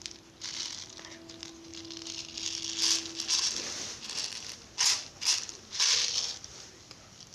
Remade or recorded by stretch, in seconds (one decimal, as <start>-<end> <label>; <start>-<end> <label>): 0.0-7.3 recorded